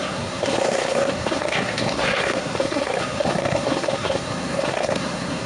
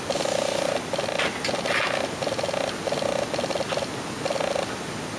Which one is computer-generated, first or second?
first